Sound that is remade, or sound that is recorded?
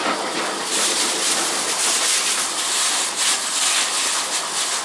recorded